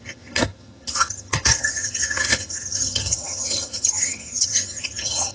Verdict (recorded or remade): remade